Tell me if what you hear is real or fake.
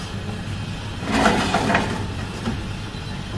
real